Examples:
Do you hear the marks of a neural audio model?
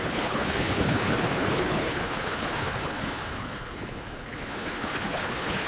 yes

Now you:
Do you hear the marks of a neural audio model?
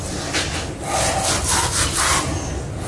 no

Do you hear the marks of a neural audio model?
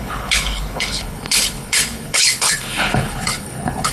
yes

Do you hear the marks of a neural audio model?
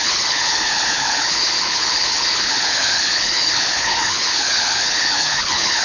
yes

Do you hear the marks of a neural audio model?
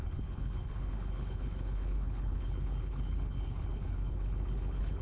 yes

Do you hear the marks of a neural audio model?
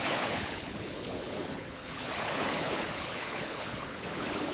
yes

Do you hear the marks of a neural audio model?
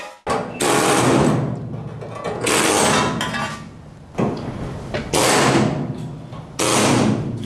no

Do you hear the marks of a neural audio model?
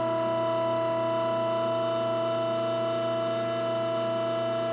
no